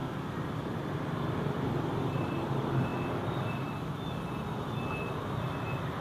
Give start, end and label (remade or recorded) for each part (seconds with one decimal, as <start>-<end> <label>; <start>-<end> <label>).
0.0-6.0 recorded